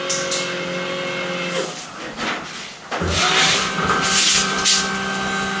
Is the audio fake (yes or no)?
no